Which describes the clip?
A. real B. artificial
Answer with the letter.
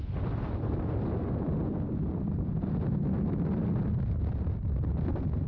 A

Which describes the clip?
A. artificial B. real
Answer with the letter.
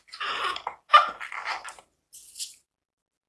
B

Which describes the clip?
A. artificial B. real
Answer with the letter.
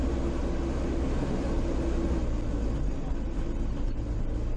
B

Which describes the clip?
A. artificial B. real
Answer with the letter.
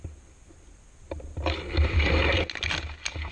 B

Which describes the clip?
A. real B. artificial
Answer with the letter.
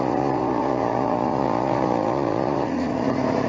B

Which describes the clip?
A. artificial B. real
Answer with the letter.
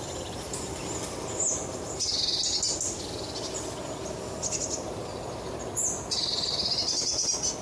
B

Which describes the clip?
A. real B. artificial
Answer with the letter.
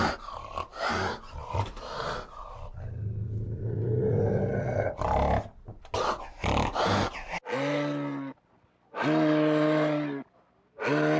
A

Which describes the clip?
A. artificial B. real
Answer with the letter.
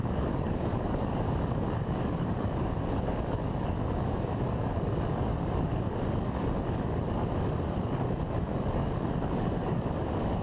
A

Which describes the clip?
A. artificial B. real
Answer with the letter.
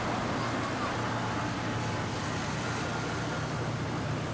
B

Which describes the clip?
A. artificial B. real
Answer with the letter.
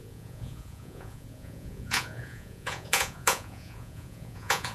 A